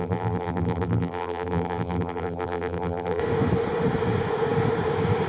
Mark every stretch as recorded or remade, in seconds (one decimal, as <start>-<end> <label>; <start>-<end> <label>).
0.0-3.2 remade; 3.2-5.3 recorded